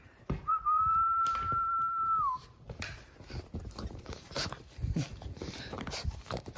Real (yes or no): no